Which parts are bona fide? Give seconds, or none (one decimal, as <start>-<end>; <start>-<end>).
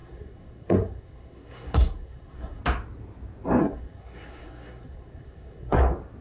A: 2.6-3.6; 5.8-6.2